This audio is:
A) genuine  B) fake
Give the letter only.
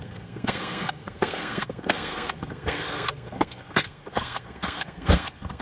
B